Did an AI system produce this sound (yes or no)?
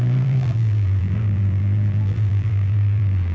yes